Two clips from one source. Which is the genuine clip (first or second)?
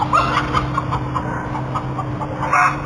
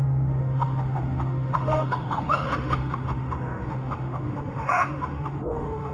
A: first